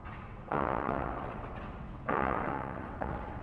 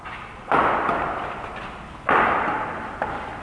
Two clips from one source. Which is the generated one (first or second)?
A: first